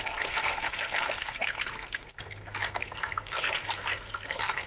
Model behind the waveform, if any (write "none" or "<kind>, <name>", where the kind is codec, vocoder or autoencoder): codec, SNAC